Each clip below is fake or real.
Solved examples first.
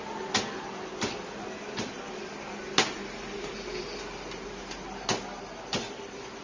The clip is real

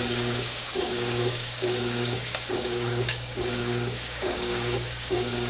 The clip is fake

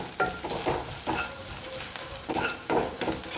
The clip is real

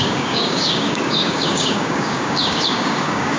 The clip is fake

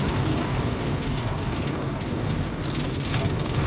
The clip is fake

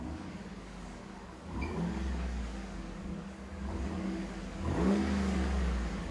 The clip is fake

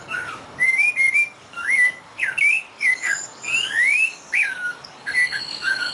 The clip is fake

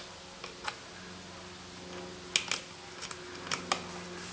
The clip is real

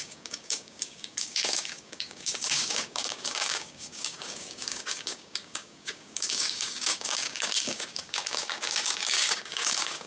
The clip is fake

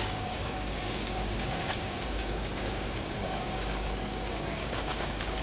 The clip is fake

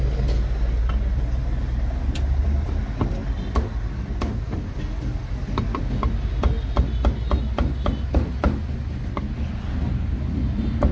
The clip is real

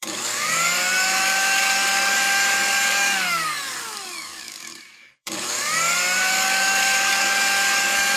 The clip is fake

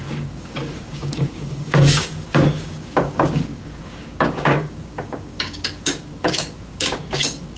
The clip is fake